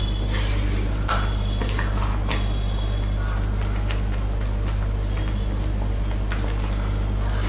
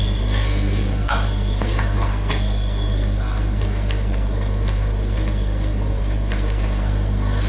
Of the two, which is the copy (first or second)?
second